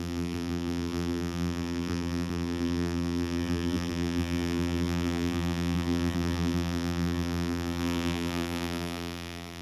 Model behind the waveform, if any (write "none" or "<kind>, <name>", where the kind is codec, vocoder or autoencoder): vocoder, BigVGAN v2